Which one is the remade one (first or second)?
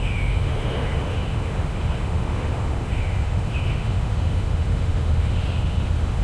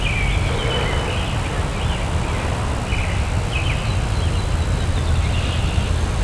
first